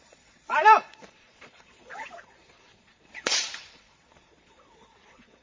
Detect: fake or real fake